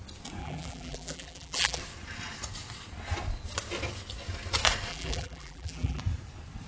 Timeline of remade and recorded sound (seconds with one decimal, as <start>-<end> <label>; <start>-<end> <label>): 0.0-0.4 recorded; 0.4-1.8 remade; 1.8-4.9 recorded; 4.9-6.0 remade; 6.0-6.7 recorded